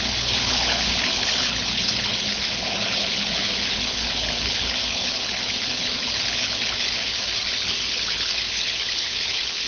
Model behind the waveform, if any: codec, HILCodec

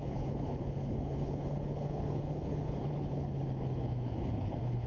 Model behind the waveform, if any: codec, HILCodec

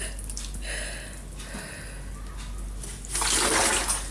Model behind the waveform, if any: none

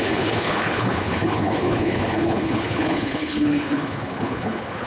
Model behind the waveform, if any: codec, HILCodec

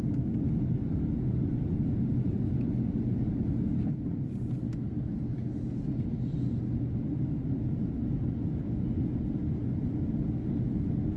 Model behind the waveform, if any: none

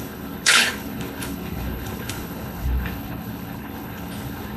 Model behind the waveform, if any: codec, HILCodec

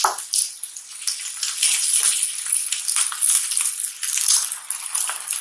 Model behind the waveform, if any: none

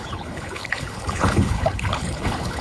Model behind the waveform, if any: codec, HILCodec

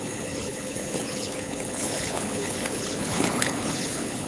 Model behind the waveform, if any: codec, HILCodec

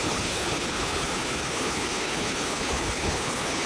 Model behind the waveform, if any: codec, HILCodec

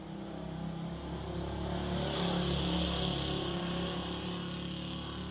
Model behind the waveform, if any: none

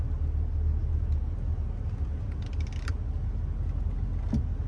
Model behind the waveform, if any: none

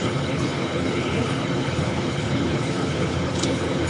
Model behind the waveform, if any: codec, HILCodec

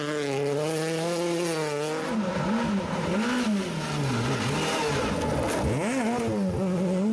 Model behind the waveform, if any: none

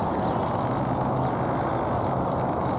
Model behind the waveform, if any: none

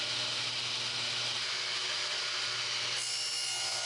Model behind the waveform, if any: none